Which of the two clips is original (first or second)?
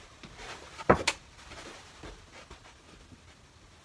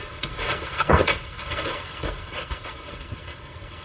first